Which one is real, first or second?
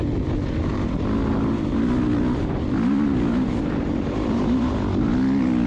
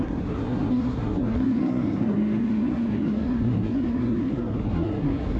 first